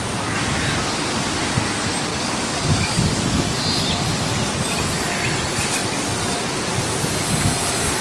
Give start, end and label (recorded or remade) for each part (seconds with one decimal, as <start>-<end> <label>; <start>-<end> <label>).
0.0-2.1 recorded; 2.1-3.2 remade; 3.2-8.0 recorded

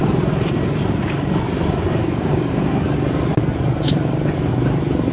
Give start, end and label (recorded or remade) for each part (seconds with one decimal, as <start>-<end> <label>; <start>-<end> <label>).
0.0-2.0 recorded; 2.0-2.7 remade; 2.7-5.1 recorded

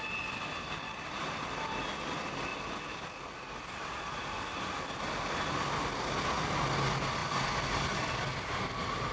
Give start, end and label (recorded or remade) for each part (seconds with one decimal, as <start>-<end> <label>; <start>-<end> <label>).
0.0-9.1 recorded

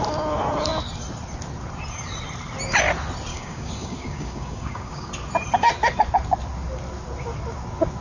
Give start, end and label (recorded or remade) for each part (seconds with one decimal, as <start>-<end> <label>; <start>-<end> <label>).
0.0-3.3 recorded; 3.3-5.1 remade; 5.1-8.0 recorded

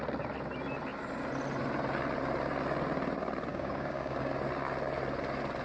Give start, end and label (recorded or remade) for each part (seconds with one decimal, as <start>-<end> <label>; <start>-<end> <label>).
0.0-3.5 recorded; 3.5-4.3 remade; 4.3-5.6 recorded

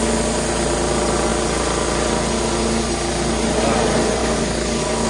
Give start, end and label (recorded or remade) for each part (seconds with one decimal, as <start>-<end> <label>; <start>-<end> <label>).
0.0-4.2 recorded; 4.2-5.1 remade

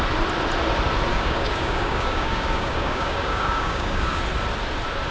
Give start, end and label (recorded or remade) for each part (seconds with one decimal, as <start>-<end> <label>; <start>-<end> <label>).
0.0-1.1 recorded; 1.1-4.2 remade; 4.2-5.1 recorded

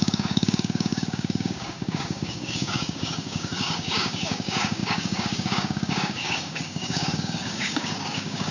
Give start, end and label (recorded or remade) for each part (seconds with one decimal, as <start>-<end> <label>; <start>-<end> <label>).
0.0-8.5 remade